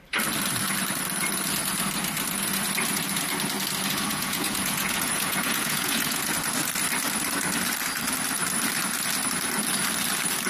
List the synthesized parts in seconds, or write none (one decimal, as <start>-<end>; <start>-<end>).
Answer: 4.1-6.2